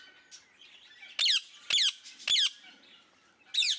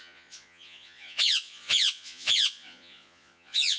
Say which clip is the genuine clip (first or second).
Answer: first